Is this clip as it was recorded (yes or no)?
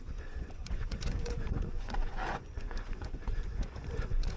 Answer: no